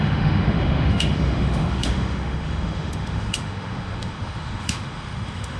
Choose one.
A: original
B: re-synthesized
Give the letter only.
B